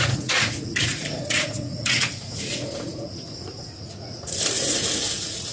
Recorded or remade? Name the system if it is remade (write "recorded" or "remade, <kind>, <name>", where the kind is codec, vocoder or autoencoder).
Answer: remade, vocoder, Vocos